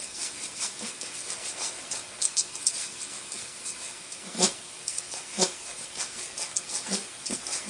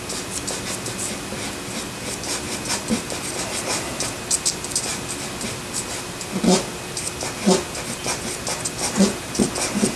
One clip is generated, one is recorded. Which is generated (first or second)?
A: first